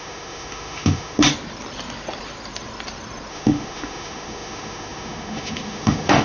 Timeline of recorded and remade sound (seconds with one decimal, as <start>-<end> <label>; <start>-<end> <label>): 0.0-1.3 remade; 1.3-3.3 recorded; 3.3-6.2 remade